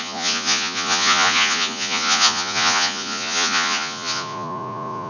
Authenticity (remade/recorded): remade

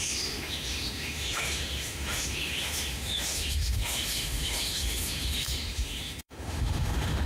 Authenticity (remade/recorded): remade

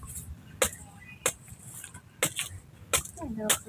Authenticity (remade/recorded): recorded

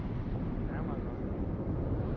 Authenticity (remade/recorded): recorded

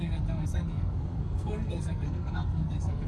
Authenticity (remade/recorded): remade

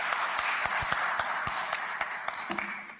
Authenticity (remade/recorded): recorded